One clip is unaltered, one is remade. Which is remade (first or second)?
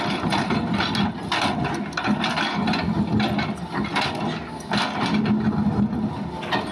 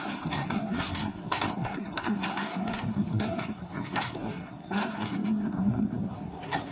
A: second